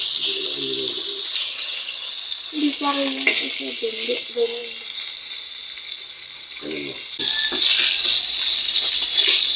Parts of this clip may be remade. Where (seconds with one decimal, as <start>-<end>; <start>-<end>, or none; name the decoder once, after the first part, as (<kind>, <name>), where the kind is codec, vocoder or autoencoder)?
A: 1.4-2.1 (vocoder, HiFi-GAN)